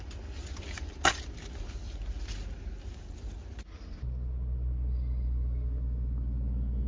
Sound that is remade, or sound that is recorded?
recorded